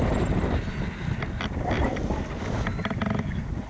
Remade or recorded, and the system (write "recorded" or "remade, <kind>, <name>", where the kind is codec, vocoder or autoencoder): recorded